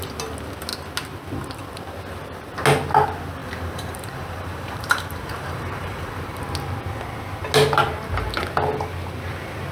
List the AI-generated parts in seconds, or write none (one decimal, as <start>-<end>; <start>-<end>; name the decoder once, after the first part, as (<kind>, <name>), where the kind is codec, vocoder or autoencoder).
3.4-6.4 (vocoder, BigVGAN v2)

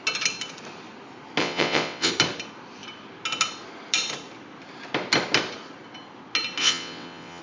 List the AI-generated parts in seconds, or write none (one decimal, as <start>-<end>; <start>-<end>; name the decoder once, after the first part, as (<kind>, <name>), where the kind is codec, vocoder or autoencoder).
1.4-2.1 (vocoder, WaveNeXt); 6.6-7.4